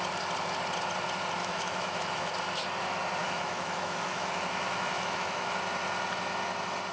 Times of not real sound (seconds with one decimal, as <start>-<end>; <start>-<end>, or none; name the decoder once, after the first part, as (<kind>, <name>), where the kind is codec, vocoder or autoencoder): 1.4-2.3 (autoencoder, DAC-VAE); 3.2-5.6